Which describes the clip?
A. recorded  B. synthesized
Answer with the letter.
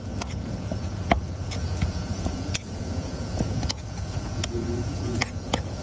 B